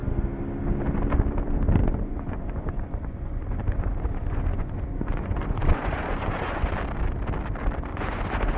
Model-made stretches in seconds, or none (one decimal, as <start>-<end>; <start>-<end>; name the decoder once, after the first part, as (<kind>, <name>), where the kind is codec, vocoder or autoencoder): 1.8-6.7 (vocoder, Vocos); 7.9-8.6